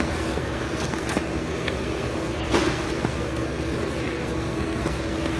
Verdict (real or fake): fake